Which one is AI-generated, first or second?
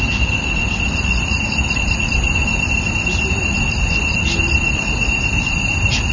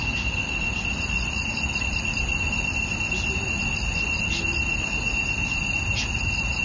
first